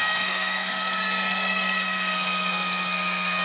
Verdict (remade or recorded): remade